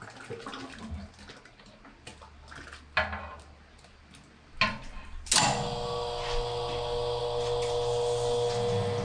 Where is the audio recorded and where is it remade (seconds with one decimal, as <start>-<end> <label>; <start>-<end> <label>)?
0.0-9.0 recorded